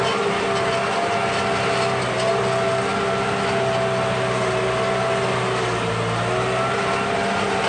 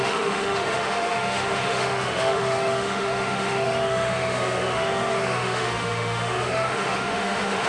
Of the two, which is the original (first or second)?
first